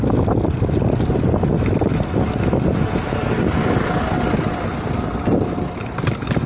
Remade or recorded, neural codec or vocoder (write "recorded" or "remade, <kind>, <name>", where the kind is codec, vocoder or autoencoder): recorded